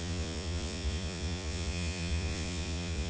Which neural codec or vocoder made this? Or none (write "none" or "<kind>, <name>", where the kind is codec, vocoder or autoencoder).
vocoder, Vocos